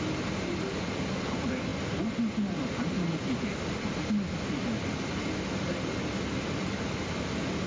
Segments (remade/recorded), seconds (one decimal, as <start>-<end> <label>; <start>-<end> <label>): 0.0-7.7 recorded